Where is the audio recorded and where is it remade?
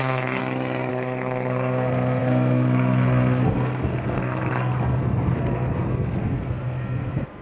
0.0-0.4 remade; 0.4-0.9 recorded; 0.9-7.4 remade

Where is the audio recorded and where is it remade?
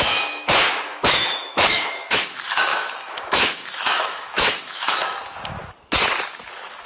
0.0-5.2 remade; 5.2-6.4 recorded; 6.4-6.9 remade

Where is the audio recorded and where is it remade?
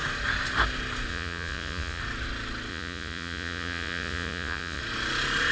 0.0-1.1 recorded; 1.1-2.0 remade; 2.0-2.7 recorded; 2.7-4.8 remade; 4.8-5.5 recorded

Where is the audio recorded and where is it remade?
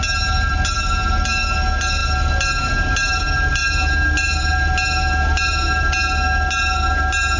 0.0-7.4 recorded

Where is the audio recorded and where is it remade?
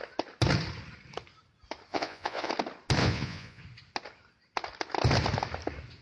0.0-1.9 recorded; 1.9-2.5 remade; 2.5-3.0 recorded; 3.0-3.6 remade; 3.6-6.0 recorded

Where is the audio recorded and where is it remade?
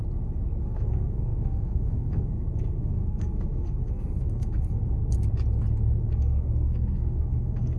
0.0-0.6 recorded; 0.6-5.0 remade; 5.0-6.0 recorded; 6.0-7.8 remade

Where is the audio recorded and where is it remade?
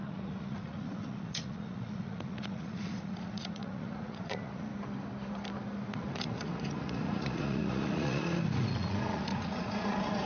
0.0-4.7 remade; 4.7-5.9 recorded; 5.9-10.3 remade